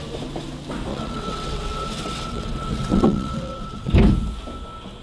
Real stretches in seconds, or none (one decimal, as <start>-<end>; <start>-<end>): 0.0-0.9; 3.9-5.0